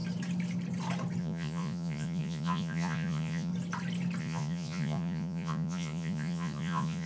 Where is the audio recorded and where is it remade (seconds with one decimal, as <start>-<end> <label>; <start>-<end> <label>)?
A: 0.0-1.2 recorded; 1.2-3.5 remade; 3.5-4.2 recorded; 4.2-7.1 remade